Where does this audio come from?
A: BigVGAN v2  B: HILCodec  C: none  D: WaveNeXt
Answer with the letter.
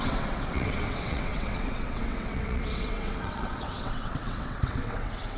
D